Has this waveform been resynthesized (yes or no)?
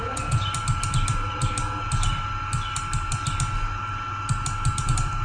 no